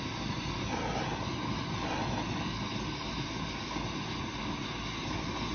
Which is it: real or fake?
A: real